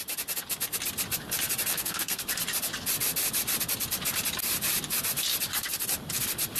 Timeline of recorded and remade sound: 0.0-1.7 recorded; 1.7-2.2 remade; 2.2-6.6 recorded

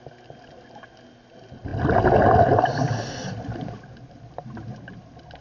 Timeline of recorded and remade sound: 0.0-5.4 recorded

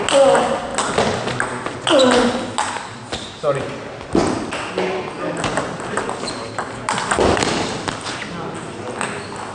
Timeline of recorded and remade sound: 0.0-9.5 recorded

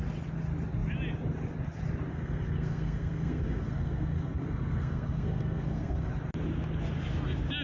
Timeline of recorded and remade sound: 0.0-2.1 recorded; 2.1-6.1 remade; 6.1-7.6 recorded

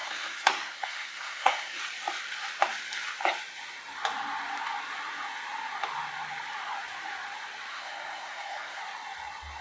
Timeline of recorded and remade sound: 0.0-1.8 remade; 1.8-7.7 recorded; 7.7-8.8 remade; 8.8-9.6 recorded

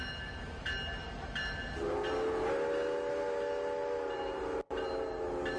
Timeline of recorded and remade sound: 0.0-5.6 recorded